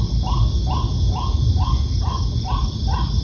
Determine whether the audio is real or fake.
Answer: real